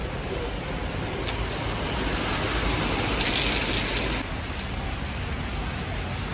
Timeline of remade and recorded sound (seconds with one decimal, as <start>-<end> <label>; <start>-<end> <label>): 0.0-6.3 recorded